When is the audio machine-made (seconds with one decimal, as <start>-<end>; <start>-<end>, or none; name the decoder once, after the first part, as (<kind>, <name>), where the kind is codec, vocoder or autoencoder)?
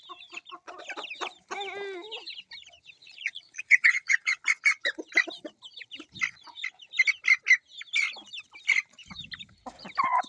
3.0-4.4 (vocoder, Vocos)